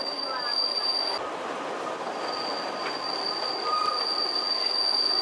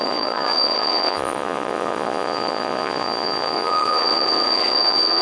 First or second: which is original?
first